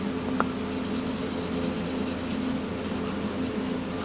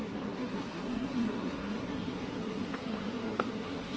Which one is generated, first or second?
second